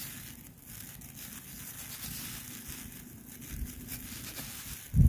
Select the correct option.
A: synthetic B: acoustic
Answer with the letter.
B